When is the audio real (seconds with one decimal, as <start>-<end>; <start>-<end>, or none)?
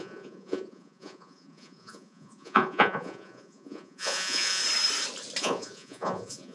4.6-5.4